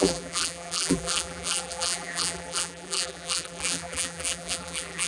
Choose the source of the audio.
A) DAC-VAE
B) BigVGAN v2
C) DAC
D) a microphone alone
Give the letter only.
B